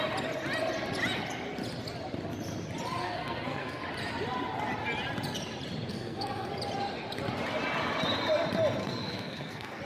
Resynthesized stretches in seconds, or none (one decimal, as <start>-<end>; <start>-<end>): 3.0-3.8; 5.9-6.5; 8.8-9.8